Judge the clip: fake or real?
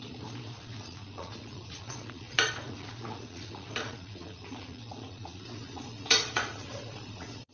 fake